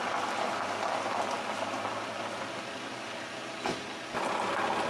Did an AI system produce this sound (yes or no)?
no